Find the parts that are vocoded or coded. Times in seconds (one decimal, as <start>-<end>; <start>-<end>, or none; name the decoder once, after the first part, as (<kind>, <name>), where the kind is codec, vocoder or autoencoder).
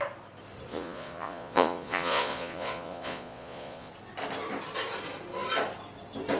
0.7-3.9 (vocoder, Vocos)